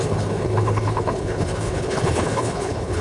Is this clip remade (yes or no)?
yes